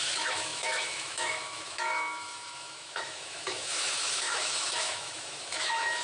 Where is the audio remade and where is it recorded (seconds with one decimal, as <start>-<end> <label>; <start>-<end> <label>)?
0.0-6.0 remade

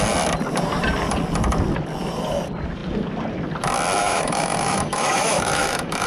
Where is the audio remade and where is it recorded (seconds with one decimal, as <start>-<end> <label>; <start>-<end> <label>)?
0.0-4.0 recorded; 4.0-6.1 remade

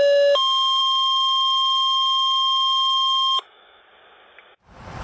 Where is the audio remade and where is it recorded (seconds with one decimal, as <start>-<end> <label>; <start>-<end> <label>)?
0.0-0.8 recorded; 0.8-3.8 remade; 3.8-5.0 recorded

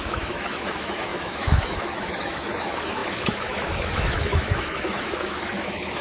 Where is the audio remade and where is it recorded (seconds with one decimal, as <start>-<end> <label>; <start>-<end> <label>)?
0.0-6.0 remade